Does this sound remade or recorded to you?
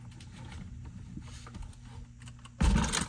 recorded